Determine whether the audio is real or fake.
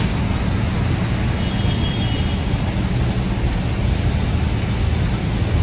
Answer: real